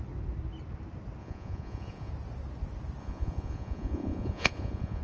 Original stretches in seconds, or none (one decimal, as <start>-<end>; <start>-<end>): 0.0-1.2; 2.1-3.0